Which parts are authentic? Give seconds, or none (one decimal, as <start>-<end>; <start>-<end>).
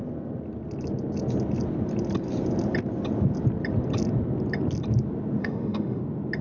0.0-5.4; 6.0-6.4